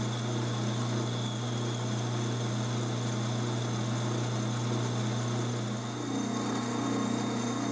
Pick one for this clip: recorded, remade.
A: recorded